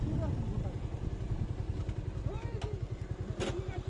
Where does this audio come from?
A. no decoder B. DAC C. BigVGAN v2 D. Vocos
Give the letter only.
A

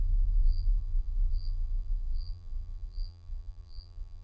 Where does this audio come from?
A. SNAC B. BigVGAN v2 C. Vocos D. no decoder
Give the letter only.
B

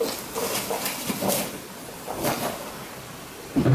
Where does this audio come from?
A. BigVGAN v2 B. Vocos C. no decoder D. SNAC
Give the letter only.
C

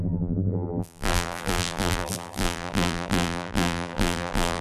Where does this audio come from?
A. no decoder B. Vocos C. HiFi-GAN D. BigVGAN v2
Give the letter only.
D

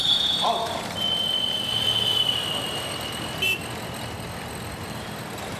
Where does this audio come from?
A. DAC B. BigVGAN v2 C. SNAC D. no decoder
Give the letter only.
B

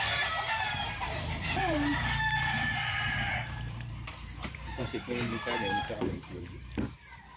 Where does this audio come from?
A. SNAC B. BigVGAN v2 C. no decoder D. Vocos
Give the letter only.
B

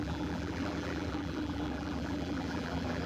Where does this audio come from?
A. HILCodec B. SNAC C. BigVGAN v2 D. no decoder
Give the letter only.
C